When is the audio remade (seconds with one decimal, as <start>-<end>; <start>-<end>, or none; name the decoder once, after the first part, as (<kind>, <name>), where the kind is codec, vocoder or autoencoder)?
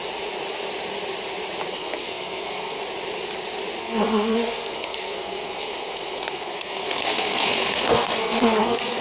1.7-2.8 (codec, SNAC); 3.8-9.0